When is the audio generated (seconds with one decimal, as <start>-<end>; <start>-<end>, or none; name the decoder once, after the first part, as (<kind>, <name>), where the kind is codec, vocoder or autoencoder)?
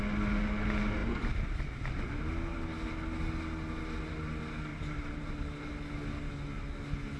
4.7-5.7 (vocoder, BigVGAN v2)